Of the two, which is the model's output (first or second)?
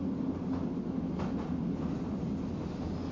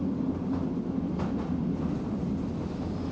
second